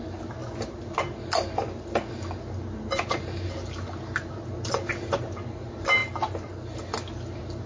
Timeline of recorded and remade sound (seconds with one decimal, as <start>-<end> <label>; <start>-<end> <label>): 0.0-7.7 recorded